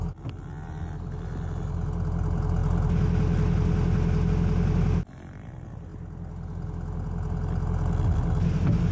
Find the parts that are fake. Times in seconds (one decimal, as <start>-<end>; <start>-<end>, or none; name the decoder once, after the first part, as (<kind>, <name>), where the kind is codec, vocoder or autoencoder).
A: none